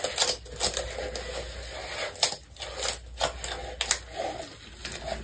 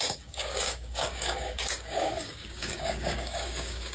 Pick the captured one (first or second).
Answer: first